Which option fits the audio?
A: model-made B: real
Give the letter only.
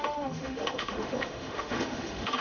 A